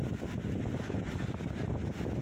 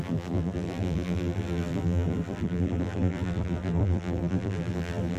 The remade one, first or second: second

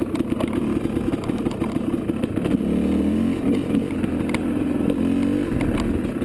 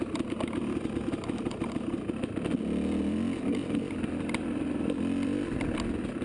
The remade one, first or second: second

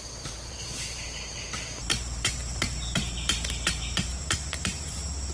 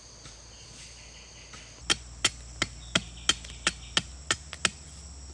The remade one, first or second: first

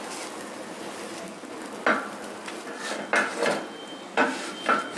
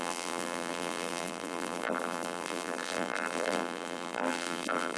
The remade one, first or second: second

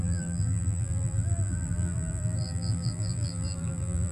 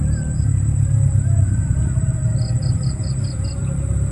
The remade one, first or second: first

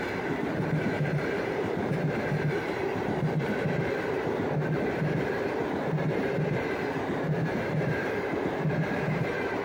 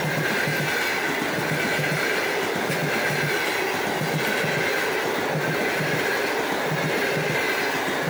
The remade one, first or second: first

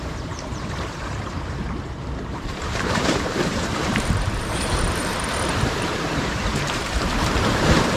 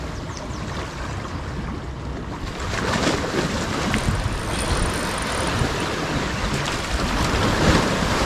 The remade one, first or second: first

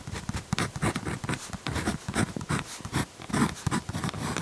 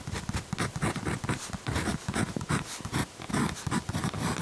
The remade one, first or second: first